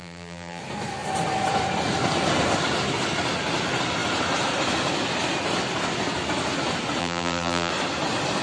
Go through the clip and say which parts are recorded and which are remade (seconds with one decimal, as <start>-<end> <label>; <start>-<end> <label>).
0.0-0.6 remade; 0.6-7.0 recorded; 7.0-7.7 remade; 7.7-8.4 recorded